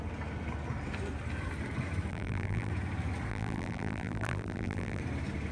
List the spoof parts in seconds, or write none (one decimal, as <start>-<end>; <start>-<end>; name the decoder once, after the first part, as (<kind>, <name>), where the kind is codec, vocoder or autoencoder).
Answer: 2.1-2.7 (vocoder, BigVGAN v2); 3.3-5.0